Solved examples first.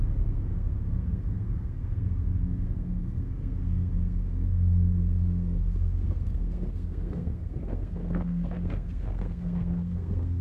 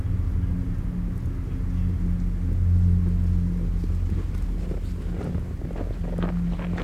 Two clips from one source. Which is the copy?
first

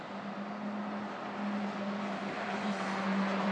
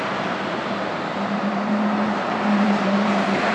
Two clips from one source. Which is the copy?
second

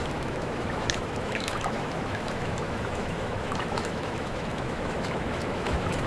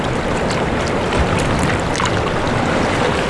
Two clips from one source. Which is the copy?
first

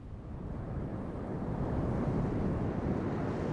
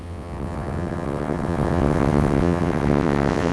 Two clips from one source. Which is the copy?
second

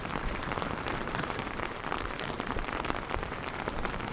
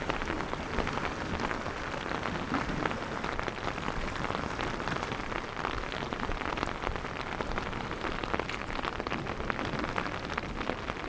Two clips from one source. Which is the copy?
first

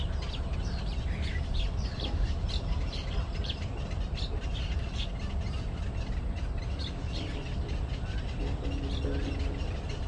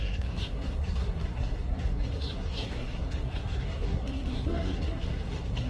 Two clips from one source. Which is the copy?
second